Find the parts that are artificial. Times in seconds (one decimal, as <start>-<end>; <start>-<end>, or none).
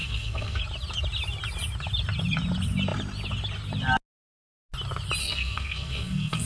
0.0-0.6; 5.2-6.5